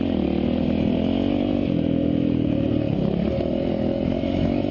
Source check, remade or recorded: recorded